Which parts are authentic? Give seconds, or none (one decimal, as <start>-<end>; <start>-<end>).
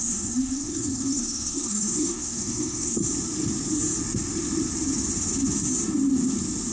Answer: 3.0-6.7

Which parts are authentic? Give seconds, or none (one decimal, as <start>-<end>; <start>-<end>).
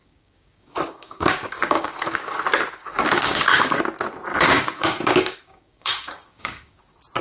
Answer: 2.4-2.8; 3.8-4.3; 6.8-7.2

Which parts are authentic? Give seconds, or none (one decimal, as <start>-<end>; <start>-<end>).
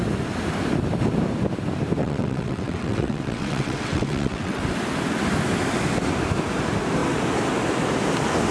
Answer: 0.0-2.0; 4.6-8.5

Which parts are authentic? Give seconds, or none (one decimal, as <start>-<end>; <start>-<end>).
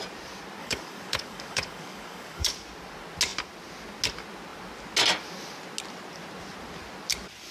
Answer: 0.0-0.6; 2.5-7.5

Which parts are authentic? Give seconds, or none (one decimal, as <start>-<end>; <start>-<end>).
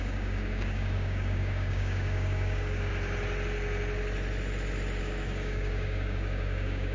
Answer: 2.9-5.0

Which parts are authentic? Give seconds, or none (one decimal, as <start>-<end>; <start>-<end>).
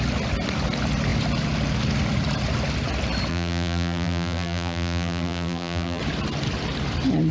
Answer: 0.0-3.3; 6.0-7.3